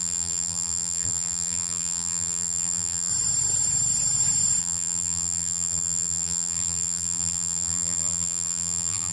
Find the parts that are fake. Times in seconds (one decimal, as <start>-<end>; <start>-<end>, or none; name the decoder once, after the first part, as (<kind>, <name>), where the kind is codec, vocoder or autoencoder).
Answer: 0.0-3.1 (vocoder, BigVGAN v2); 4.6-9.1